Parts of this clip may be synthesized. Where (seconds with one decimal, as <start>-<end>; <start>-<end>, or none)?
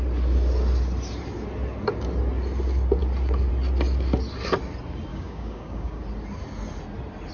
5.1-6.0